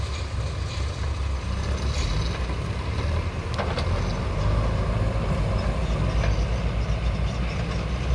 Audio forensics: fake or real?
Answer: real